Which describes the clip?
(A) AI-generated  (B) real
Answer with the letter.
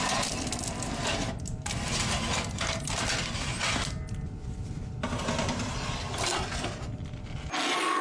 B